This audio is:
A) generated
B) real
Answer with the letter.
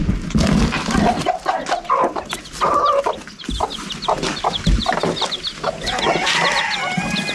B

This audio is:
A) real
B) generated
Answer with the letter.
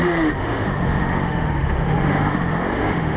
B